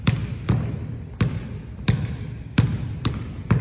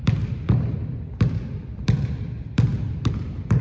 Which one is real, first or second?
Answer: first